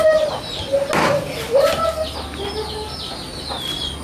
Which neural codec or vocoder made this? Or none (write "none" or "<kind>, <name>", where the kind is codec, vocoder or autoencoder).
none